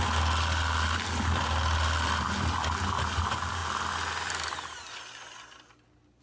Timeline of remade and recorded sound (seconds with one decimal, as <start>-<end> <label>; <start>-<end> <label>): 0.0-6.2 recorded